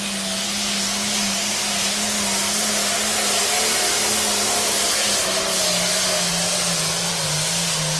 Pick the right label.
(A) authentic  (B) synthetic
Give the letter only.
A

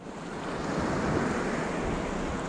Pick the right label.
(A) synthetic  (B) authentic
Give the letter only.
B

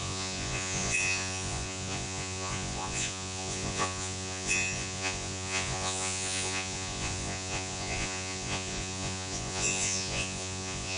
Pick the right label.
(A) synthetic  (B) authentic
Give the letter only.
A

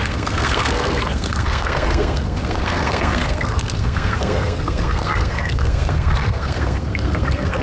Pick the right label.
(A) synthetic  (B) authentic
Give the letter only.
A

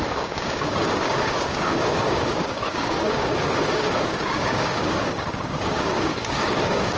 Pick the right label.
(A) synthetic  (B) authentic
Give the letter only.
A